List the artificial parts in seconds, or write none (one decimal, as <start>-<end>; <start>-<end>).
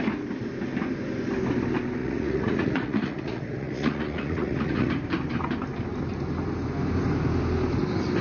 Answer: 2.0-4.9